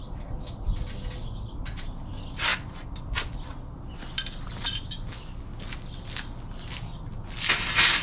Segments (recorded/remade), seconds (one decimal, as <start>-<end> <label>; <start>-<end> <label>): 0.0-8.0 recorded